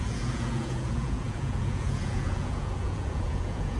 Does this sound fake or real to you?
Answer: fake